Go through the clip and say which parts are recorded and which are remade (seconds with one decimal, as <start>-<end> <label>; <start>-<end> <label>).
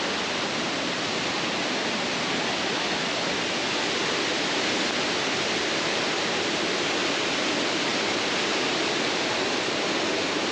0.0-10.5 recorded